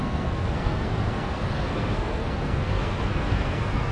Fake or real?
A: fake